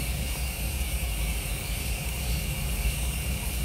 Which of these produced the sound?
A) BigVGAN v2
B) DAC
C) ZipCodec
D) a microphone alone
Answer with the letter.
B